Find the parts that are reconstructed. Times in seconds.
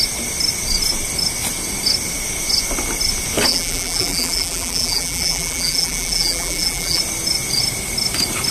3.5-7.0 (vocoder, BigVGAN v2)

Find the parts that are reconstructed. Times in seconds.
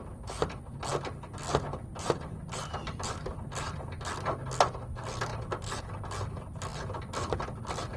0.0-0.6 (vocoder, BigVGAN v2); 1.7-3.8; 5.3-5.8; 6.7-7.6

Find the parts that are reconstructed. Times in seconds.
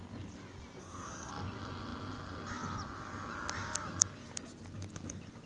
0.8-1.3 (codec, SNAC)